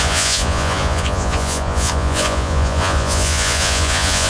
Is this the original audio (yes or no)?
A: no